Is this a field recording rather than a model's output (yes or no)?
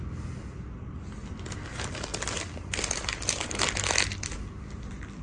yes